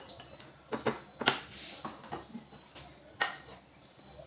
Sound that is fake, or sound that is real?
real